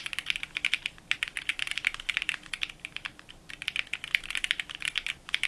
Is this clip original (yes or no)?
yes